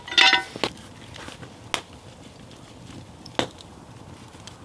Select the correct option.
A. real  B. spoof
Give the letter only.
A